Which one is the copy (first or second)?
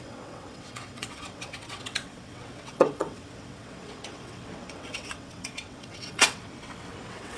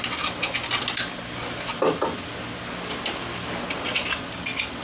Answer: first